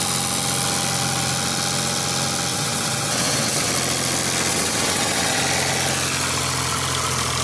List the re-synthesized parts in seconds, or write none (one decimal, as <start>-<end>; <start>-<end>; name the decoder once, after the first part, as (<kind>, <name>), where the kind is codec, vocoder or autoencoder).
2.5-3.7 (vocoder, WaveNeXt); 4.5-5.4